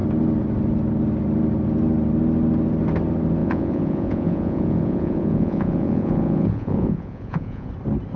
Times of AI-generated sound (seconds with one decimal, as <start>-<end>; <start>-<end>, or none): 3.4-7.7